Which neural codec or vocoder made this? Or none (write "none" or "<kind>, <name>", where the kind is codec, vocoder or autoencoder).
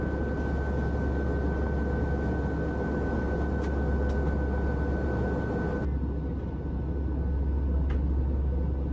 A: none